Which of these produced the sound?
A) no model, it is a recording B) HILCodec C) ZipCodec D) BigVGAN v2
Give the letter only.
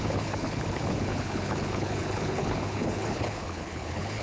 B